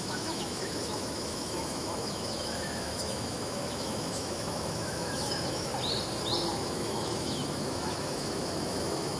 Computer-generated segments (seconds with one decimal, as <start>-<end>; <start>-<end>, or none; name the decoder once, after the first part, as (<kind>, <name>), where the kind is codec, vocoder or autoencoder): 0.0-5.7 (autoencoder, DAC-VAE); 6.5-9.2